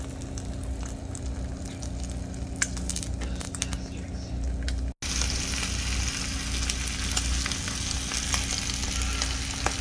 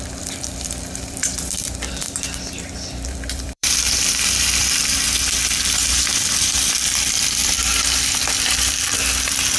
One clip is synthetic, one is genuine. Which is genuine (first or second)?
first